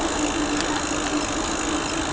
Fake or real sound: real